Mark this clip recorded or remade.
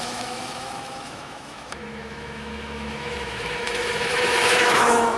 remade